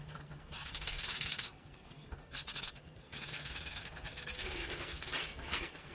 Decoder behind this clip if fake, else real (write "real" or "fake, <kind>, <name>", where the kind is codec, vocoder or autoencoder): fake, codec, SNAC